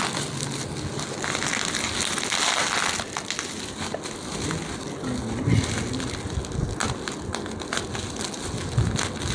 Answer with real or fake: real